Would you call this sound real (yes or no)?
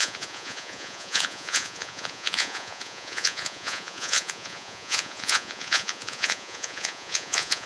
no